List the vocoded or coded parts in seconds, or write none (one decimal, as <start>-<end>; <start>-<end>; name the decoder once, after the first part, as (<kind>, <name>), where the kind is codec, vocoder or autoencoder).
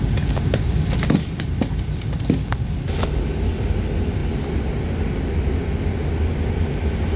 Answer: 0.0-4.2 (vocoder, BigVGAN v2); 6.5-7.2